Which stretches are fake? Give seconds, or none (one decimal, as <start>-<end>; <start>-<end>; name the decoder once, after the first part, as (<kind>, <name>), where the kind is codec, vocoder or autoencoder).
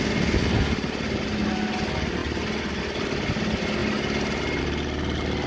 none